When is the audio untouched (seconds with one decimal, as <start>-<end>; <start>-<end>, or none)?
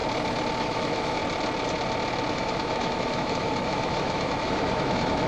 0.0-0.6; 1.2-2.3